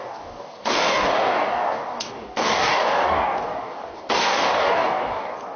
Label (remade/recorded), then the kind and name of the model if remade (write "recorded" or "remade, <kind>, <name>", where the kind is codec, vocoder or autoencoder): remade, codec, DAC